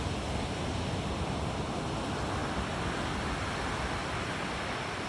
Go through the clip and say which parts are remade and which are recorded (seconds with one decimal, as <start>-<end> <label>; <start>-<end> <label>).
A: 0.0-5.1 recorded